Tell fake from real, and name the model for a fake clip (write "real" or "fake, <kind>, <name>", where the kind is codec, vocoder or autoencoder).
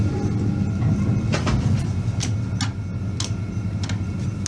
real